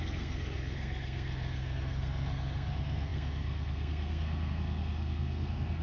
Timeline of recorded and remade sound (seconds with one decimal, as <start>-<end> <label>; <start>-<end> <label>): 0.0-5.8 remade